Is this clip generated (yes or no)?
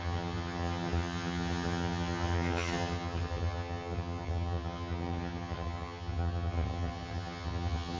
yes